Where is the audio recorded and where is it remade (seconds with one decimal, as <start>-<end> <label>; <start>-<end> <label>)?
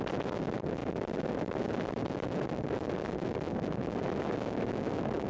0.0-5.3 recorded